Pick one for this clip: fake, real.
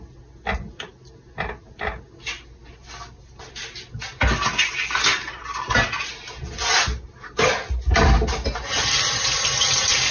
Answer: real